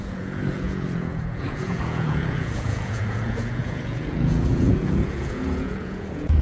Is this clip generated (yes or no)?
yes